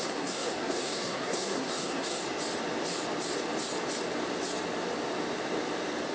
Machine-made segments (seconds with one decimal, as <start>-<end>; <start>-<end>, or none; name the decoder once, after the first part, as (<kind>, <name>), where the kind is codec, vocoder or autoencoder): 0.0-2.2 (codec, SNAC)